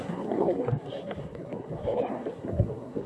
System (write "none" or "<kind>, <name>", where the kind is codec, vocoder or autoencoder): codec, SNAC